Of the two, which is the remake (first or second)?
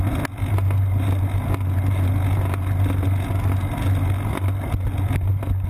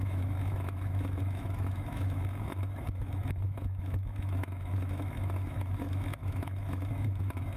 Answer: second